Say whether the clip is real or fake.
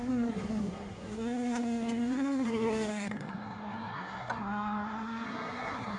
fake